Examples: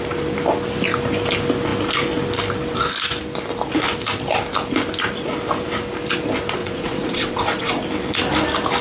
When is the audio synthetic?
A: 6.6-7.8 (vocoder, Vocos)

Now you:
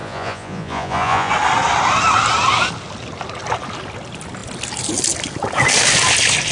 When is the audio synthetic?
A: 0.0-1.3 (vocoder, Vocos)

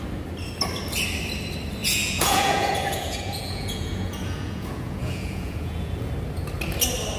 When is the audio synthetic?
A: 1.8-6.1 (vocoder, Vocos)